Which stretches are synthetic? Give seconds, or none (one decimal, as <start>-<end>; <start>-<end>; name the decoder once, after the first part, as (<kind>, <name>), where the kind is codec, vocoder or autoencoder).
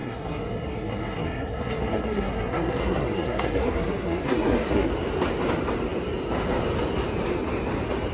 0.0-4.9 (codec, SNAC)